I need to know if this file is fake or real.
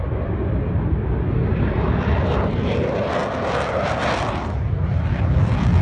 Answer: real